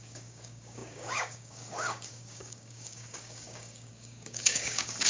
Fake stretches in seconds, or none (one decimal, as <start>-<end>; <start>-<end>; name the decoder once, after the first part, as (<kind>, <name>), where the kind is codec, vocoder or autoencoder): 0.0-5.1 (codec, DAC)